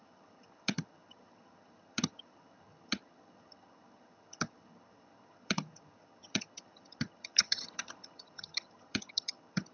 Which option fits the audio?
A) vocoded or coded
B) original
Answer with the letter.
A